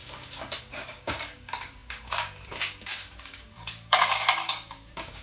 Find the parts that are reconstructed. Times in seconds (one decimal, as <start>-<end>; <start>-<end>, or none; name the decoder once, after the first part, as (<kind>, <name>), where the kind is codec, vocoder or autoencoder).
0.0-5.2 (codec, DAC)